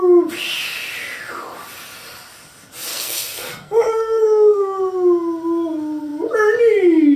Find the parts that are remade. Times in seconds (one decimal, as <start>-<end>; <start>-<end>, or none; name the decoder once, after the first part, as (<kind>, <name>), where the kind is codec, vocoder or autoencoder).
2.9-4.8 (codec, SNAC)